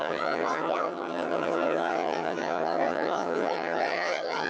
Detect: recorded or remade remade